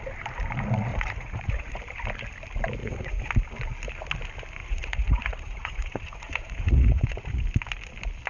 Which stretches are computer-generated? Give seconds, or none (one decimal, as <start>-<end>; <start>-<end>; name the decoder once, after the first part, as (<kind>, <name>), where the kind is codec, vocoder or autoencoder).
0.9-1.8 (vocoder, Vocos); 2.8-3.3; 4.6-7.4